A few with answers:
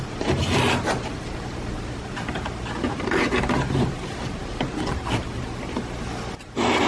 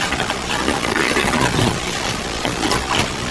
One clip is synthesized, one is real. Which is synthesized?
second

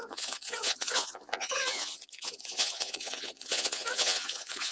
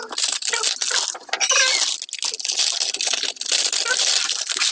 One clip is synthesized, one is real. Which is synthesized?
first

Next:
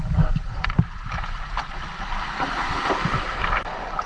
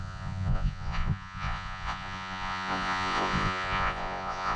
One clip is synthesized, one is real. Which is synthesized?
second